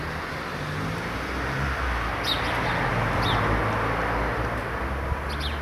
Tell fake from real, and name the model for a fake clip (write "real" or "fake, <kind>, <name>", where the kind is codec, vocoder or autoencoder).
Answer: real